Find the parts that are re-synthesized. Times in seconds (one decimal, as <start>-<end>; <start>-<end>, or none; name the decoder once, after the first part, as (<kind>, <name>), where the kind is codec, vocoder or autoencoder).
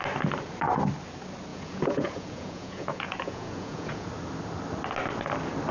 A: 1.5-4.1 (vocoder, Vocos)